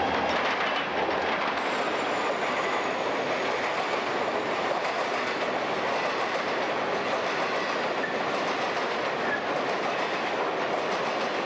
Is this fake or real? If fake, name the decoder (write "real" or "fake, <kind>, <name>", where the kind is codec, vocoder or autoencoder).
real